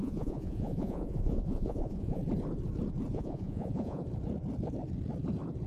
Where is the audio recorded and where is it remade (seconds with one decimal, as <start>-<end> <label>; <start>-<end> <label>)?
0.0-2.2 remade; 2.2-3.1 recorded; 3.1-4.0 remade; 4.0-5.7 recorded